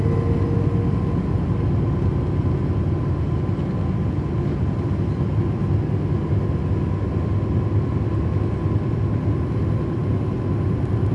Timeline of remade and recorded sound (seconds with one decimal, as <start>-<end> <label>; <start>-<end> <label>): 0.0-11.1 recorded